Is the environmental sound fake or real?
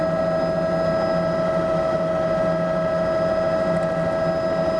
real